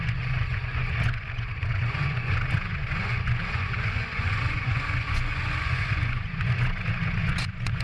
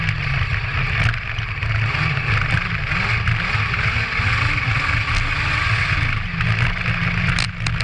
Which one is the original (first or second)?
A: second